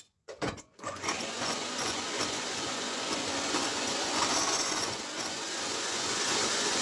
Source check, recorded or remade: remade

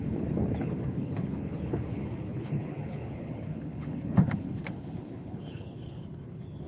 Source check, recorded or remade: remade